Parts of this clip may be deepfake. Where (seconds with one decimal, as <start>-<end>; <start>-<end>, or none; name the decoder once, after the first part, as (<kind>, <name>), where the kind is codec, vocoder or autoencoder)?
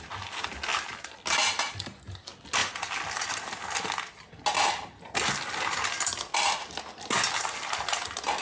none